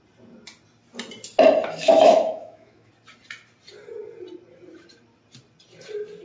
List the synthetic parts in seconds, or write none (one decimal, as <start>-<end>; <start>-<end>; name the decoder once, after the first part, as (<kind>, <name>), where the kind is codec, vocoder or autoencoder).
1.8-2.9 (autoencoder, DAC-VAE)